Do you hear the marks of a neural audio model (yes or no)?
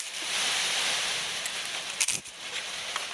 no